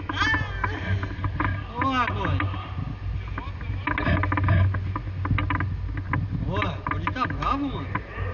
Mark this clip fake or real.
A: real